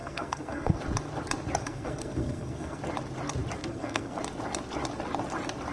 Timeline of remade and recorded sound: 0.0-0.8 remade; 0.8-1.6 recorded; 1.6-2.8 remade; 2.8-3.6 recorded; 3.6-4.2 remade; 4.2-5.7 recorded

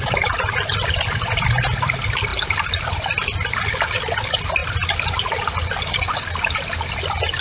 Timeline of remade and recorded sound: 0.0-7.4 recorded

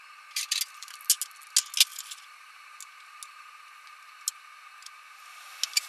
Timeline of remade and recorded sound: 0.0-1.9 recorded; 1.9-2.6 remade; 2.6-5.9 recorded

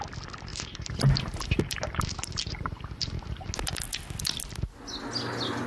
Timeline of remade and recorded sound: 0.0-0.5 recorded; 0.5-3.5 remade; 3.5-5.7 recorded